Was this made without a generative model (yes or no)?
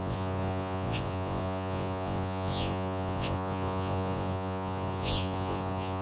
no